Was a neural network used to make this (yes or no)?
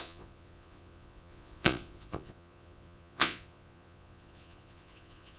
yes